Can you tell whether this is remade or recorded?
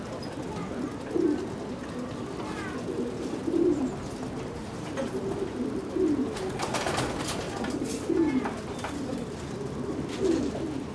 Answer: recorded